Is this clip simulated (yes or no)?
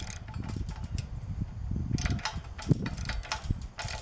no